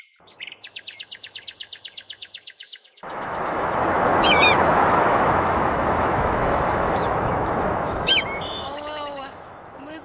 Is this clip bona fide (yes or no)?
no